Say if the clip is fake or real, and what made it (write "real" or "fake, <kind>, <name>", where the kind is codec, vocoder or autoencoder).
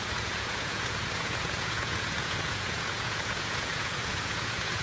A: fake, vocoder, Vocos